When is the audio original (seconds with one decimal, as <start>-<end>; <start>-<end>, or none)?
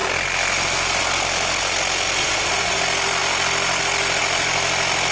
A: 0.0-2.2; 2.8-5.1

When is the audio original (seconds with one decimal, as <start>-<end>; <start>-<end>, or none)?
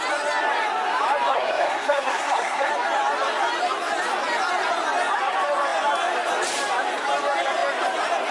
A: 0.0-1.3; 2.7-8.3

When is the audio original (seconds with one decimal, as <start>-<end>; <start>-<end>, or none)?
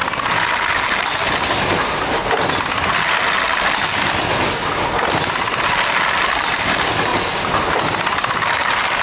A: 0.0-7.1; 7.8-9.0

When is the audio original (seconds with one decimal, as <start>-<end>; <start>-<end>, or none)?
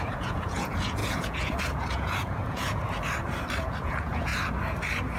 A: 2.8-3.8; 4.3-5.2